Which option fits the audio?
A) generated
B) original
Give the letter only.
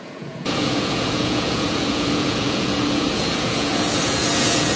A